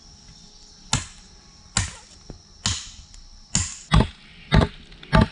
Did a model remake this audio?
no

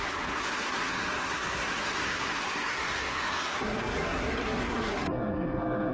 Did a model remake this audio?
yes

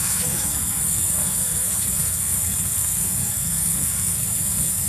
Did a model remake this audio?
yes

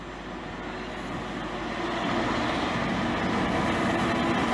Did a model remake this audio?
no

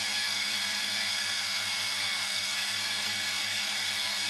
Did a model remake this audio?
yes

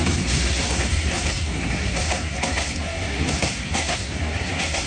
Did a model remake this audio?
yes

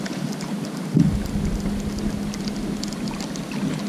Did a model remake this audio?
no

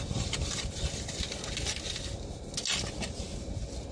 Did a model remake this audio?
no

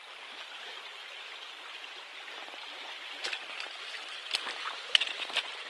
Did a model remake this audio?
no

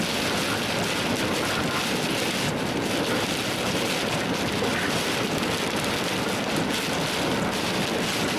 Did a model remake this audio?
no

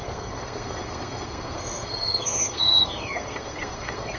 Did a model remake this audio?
yes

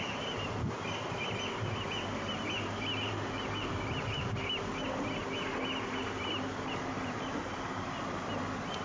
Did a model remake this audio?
no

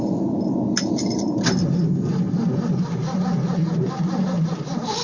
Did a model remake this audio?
no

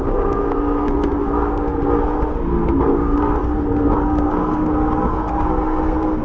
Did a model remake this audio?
yes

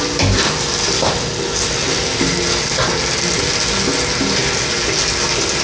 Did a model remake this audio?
no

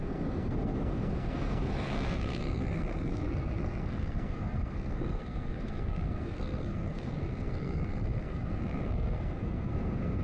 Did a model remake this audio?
yes